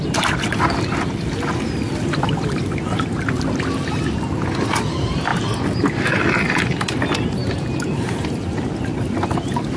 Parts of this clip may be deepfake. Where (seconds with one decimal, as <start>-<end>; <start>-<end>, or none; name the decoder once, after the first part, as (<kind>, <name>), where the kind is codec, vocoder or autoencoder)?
none

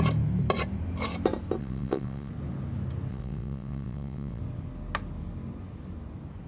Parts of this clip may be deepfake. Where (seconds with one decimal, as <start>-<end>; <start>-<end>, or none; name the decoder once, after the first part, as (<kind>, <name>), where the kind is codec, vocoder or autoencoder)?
1.6-2.3 (vocoder, WaveNeXt); 3.1-4.4